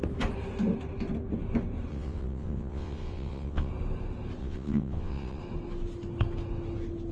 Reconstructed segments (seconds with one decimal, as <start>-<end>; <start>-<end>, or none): 1.9-3.7; 4.4-5.4